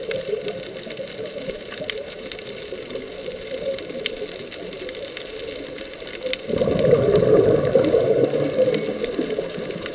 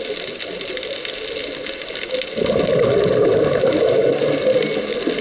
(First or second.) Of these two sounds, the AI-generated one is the first